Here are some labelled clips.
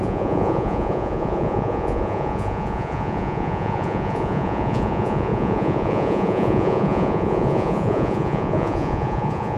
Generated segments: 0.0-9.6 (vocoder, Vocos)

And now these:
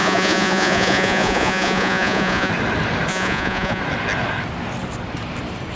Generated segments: 0.0-2.5 (vocoder, Vocos); 3.1-3.8